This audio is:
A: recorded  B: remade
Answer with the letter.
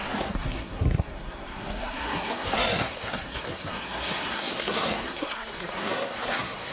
B